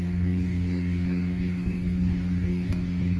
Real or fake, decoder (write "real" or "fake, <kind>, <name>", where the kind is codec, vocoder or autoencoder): fake, codec, DAC